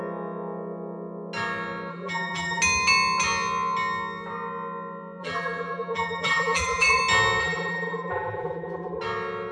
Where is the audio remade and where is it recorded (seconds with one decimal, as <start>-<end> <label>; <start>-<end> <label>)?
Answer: 0.0-1.9 recorded; 1.9-2.6 remade; 2.6-5.2 recorded; 5.2-7.0 remade; 7.0-7.4 recorded; 7.4-9.0 remade; 9.0-9.5 recorded